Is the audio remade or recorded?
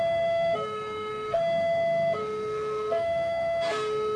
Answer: remade